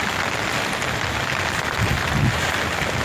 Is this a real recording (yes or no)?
yes